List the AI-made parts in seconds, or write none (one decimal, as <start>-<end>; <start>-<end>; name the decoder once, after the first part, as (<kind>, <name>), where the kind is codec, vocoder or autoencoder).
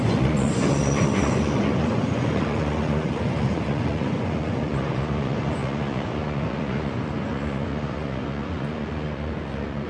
0.0-9.9 (vocoder, Vocos)